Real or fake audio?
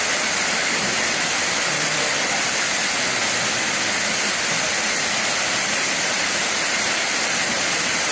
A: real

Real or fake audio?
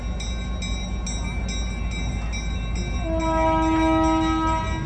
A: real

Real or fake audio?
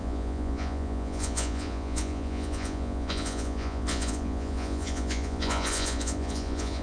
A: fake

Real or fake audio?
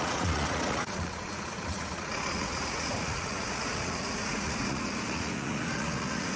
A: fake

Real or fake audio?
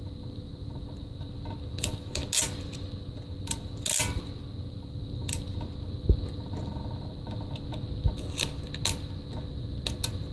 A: real